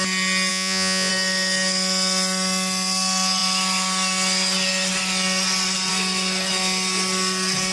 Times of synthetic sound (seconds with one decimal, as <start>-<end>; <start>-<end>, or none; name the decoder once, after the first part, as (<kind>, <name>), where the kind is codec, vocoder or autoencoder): 0.5-1.1 (vocoder, Vocos)